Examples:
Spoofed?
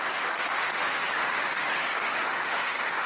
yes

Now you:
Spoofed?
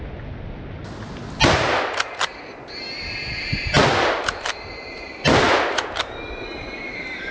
no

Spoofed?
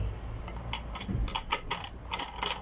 no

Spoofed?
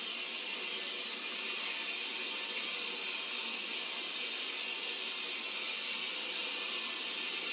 no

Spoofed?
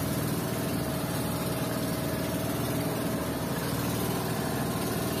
no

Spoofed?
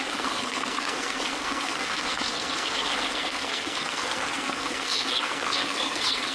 yes